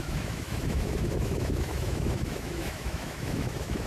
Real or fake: fake